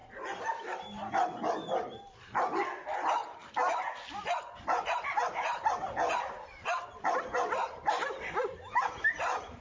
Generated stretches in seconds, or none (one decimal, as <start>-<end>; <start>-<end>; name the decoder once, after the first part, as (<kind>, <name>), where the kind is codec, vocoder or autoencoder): none